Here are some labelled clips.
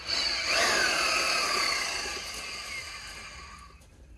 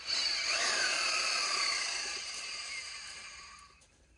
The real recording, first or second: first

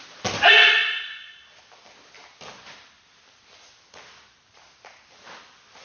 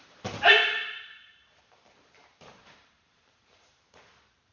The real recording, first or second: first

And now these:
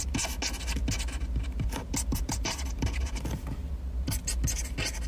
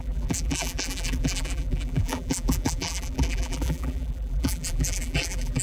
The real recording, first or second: first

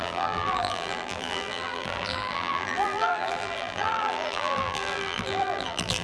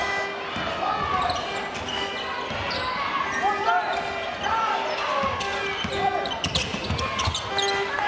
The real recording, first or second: second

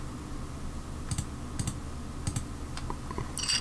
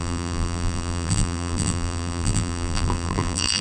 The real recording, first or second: first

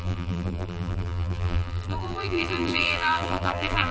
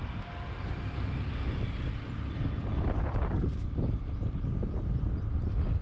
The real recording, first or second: second